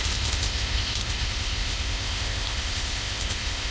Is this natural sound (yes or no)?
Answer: no